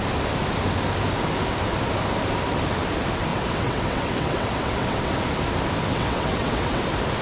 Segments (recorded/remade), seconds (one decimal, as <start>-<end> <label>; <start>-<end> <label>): 0.0-3.3 recorded; 3.3-5.1 remade; 5.1-5.9 recorded; 5.9-6.8 remade; 6.8-7.2 recorded